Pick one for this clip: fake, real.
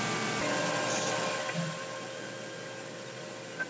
real